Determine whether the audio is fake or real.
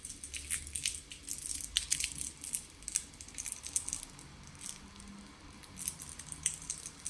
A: real